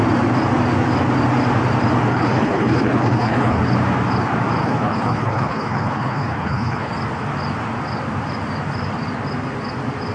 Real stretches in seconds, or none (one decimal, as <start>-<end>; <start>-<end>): 0.0-2.1; 3.6-4.6; 6.9-10.1